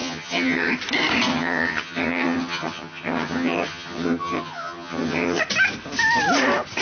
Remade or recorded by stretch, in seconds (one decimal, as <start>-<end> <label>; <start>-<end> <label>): 0.0-0.7 remade; 0.7-1.3 recorded; 1.3-5.4 remade; 5.4-6.8 recorded